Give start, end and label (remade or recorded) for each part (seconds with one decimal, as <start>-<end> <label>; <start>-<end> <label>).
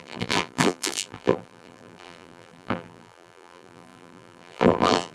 0.0-5.1 remade